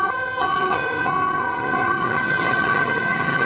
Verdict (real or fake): fake